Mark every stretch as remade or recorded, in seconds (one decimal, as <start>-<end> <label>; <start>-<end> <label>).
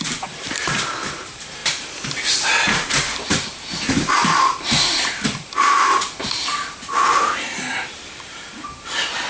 0.0-9.3 remade